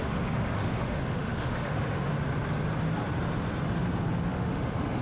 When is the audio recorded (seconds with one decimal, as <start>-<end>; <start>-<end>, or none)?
2.1-4.3